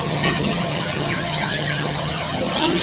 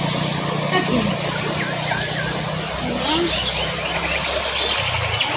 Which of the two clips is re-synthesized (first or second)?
first